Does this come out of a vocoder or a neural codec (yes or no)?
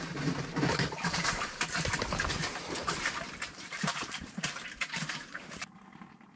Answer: yes